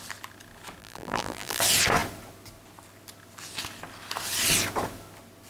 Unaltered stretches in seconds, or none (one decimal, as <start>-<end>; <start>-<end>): 0.0-0.8; 1.6-5.5